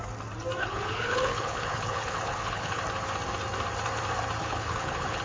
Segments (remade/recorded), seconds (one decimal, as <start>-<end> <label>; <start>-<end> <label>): 0.0-0.6 recorded; 0.6-2.8 remade; 2.8-4.4 recorded; 4.4-5.2 remade